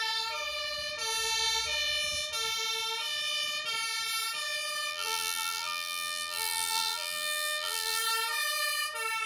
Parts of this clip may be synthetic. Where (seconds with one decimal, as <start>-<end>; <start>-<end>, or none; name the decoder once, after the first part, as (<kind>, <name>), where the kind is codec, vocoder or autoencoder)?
4.9-8.0 (vocoder, BigVGAN v2)